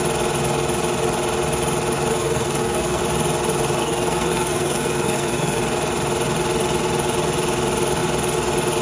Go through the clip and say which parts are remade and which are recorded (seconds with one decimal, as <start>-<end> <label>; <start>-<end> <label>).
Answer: 0.0-2.1 recorded; 2.1-3.0 remade; 3.0-3.8 recorded; 3.8-5.6 remade; 5.6-8.8 recorded